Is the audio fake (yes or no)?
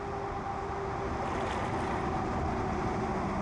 no